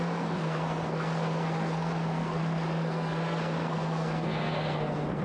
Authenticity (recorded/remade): remade